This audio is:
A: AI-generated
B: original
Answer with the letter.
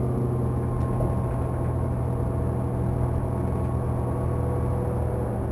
B